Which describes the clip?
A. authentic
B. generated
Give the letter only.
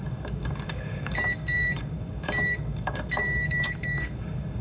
B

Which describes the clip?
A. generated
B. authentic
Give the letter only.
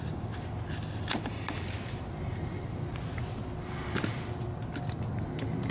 B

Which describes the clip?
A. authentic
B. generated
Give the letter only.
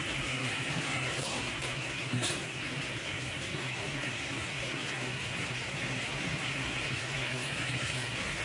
B